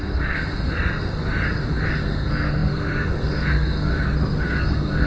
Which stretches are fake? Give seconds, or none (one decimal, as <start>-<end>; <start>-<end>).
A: 0.0-1.2; 1.7-3.9; 4.4-5.1